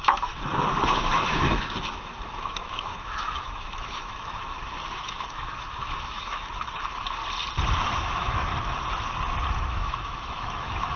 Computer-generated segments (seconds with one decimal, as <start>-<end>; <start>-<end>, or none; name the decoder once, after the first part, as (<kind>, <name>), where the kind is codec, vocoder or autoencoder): 0.0-7.2 (autoencoder, DAC-VAE); 7.8-8.5; 9.5-11.0